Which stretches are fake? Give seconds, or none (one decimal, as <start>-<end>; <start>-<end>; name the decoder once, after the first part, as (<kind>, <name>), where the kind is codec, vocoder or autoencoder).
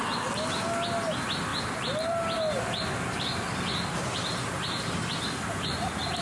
none